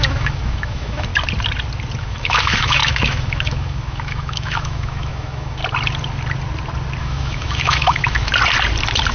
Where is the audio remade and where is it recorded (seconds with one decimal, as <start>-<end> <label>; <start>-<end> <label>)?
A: 0.0-1.1 remade; 1.1-2.0 recorded; 2.0-5.6 remade; 5.6-7.0 recorded; 7.0-8.3 remade; 8.3-9.1 recorded